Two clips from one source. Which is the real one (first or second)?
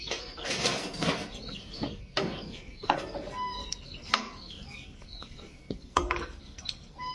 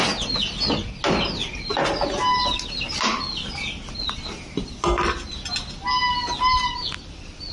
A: second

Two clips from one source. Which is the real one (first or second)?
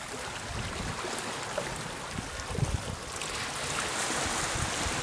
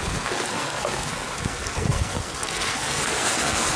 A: first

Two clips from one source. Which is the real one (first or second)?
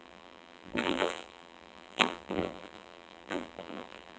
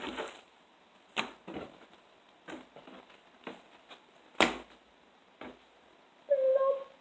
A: second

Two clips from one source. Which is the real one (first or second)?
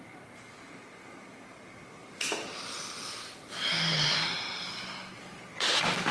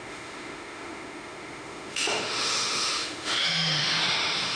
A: first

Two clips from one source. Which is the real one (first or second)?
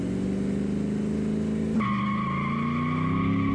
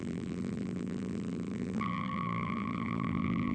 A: first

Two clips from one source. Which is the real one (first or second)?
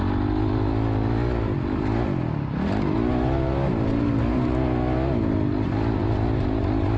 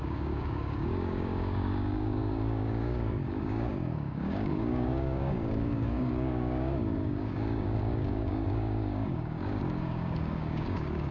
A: first